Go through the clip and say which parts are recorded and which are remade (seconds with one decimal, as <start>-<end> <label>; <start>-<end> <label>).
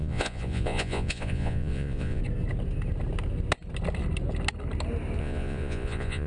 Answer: 0.0-2.2 remade; 2.2-5.2 recorded; 5.2-6.3 remade